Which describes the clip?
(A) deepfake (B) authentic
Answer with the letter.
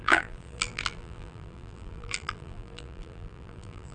A